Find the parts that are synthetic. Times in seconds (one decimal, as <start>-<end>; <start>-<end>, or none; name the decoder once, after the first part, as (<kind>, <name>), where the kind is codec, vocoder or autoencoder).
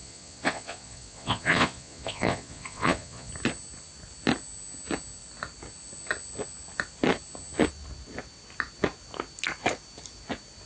0.0-3.3 (vocoder, Vocos)